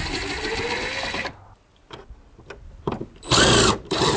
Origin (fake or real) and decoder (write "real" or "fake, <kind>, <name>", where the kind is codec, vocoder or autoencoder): real